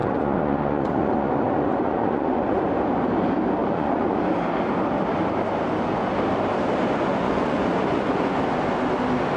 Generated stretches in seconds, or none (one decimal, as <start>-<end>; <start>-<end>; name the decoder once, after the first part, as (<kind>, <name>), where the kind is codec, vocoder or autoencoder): 0.0-2.7 (vocoder, Vocos); 3.6-4.2; 7.1-8.4